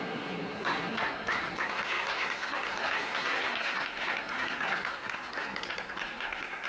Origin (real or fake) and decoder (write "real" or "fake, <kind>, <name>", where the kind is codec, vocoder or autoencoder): fake, codec, SNAC